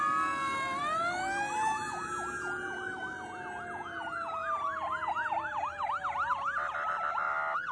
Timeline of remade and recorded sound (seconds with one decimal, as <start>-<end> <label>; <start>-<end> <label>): 0.0-7.7 recorded